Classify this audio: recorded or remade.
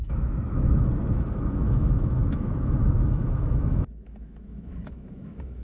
remade